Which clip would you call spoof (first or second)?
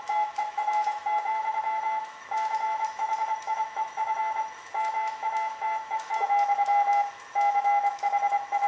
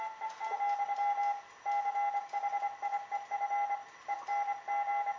first